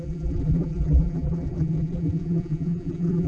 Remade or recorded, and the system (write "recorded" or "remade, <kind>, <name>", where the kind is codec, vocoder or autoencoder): remade, vocoder, BigVGAN v2